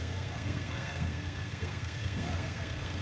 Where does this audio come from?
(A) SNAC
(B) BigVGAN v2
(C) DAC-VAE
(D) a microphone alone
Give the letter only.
A